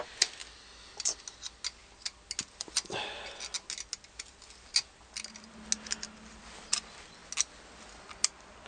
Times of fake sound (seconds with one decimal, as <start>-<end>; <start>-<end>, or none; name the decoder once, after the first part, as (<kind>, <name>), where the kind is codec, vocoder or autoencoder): none